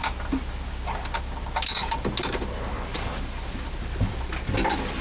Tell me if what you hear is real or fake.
real